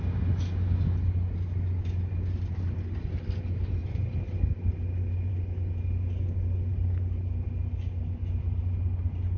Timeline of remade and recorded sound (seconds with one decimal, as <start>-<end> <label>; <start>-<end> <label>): 0.0-9.4 recorded